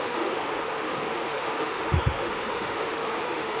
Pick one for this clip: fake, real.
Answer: fake